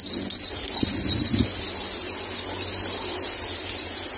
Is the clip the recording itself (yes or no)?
yes